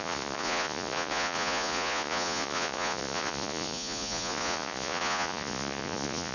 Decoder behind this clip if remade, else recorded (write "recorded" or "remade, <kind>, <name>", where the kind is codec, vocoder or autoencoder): remade, vocoder, Vocos